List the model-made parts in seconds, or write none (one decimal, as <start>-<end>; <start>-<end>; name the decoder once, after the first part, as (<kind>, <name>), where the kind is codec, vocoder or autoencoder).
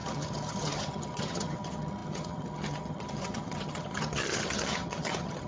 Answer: 0.0-5.5 (vocoder, HiFi-GAN)